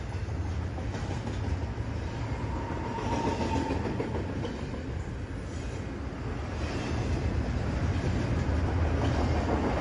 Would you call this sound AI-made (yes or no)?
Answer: no